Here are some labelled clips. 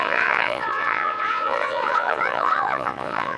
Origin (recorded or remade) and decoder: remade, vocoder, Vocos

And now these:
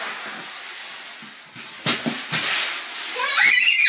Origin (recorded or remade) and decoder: recorded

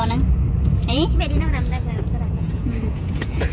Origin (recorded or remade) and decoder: remade, vocoder, Vocos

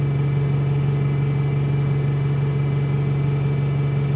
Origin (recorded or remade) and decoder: recorded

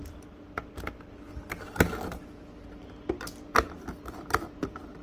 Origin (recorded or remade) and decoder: recorded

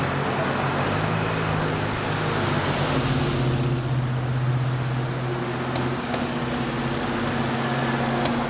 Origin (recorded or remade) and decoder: recorded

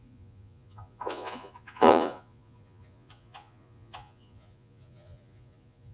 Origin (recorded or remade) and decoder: remade, vocoder, Vocos